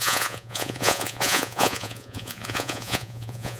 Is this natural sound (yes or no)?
no